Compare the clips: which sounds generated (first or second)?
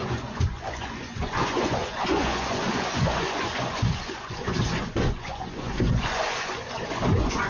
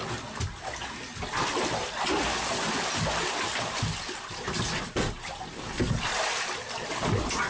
first